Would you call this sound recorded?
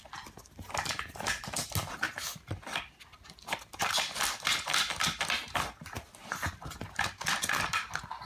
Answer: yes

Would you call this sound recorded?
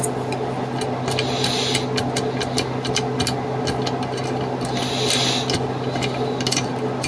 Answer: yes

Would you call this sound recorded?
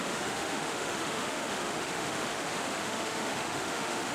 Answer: no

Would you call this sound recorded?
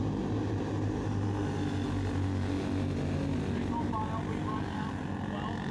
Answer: yes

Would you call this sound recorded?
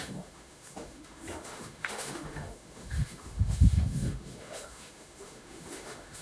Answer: no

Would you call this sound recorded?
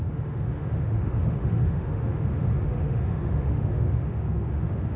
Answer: no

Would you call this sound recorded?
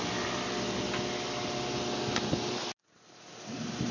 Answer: yes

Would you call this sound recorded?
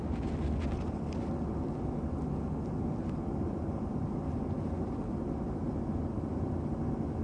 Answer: yes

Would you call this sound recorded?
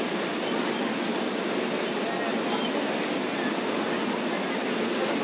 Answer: yes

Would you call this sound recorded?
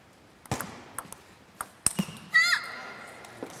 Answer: yes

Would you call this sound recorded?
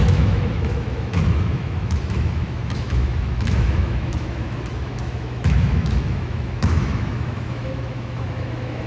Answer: no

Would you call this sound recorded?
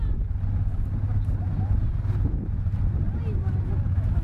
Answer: yes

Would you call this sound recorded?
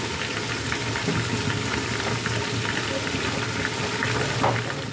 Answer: yes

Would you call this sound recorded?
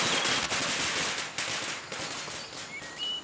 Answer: yes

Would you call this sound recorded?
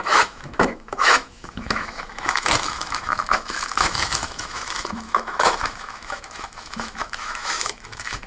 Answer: no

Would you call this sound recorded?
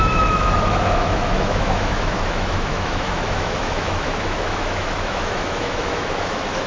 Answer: no